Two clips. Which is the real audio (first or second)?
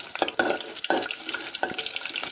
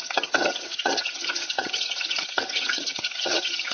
first